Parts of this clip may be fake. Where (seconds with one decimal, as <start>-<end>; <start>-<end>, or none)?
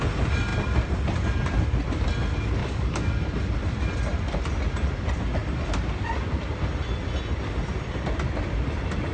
2.6-3.2